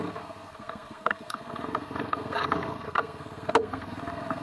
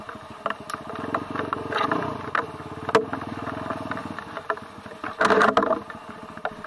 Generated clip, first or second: first